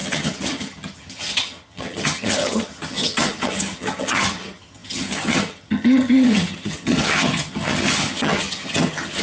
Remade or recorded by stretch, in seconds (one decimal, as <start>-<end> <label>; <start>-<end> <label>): 0.0-9.2 remade